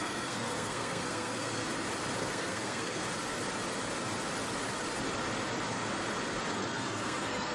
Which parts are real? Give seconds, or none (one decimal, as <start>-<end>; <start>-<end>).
1.6-2.2; 3.0-6.5

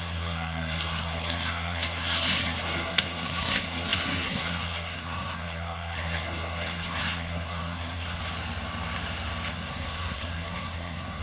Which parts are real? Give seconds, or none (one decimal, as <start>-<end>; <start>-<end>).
8.2-9.5

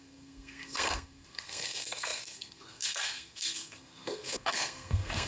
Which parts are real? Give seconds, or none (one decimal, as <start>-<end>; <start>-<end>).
none

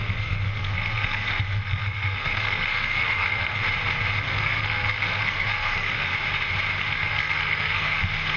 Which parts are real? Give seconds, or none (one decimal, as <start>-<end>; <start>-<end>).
3.6-4.2; 6.1-6.8

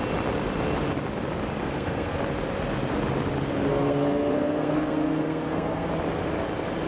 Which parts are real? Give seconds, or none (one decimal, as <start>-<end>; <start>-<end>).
0.0-1.6; 2.2-3.7; 5.9-6.9

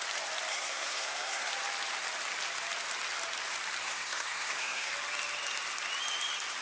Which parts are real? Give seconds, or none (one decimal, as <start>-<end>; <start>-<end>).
0.0-0.5; 1.5-3.8; 4.9-6.6